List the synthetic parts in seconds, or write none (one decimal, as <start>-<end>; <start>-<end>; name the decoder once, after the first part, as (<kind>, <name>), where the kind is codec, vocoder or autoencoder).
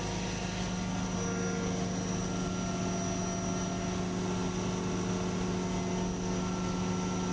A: none